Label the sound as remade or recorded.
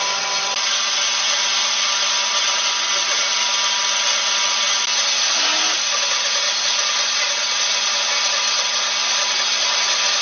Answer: recorded